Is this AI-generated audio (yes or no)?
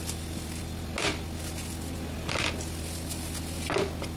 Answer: no